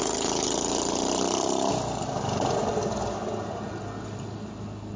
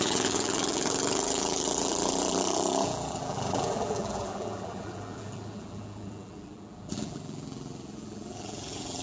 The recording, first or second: first